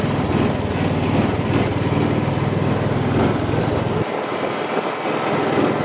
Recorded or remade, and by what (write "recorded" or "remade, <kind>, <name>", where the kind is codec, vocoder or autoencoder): recorded